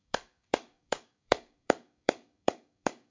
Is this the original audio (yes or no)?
no